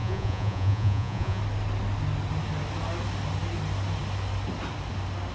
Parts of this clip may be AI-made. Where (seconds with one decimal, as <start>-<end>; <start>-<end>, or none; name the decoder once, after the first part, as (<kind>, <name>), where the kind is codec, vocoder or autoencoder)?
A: 0.0-1.4 (vocoder, Vocos)